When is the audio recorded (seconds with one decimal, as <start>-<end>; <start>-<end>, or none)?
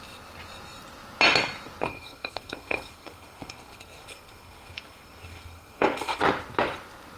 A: 0.0-1.9; 6.2-7.2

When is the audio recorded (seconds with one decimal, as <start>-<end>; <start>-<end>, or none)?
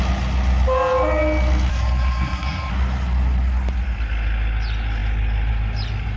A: 0.0-1.7; 2.7-6.2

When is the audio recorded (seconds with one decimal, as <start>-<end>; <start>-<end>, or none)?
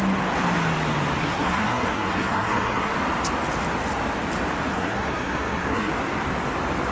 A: 0.0-1.2; 2.9-4.7; 5.9-6.9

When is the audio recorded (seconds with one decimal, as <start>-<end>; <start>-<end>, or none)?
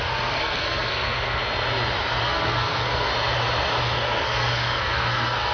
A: 1.4-2.2; 3.1-3.8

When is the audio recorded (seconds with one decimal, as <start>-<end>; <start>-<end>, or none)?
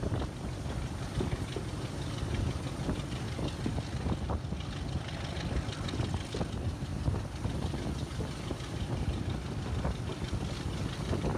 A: 0.0-11.4